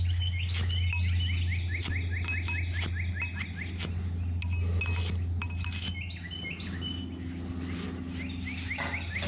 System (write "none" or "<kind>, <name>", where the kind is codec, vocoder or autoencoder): none